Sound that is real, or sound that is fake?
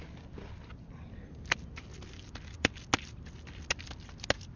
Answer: real